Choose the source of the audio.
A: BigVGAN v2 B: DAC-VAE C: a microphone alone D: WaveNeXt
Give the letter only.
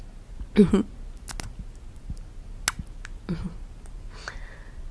C